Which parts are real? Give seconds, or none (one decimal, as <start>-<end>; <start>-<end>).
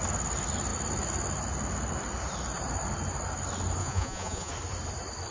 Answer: 0.0-3.8; 4.5-5.3